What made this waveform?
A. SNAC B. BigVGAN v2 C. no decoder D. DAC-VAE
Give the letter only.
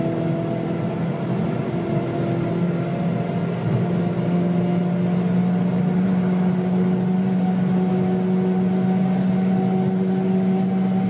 C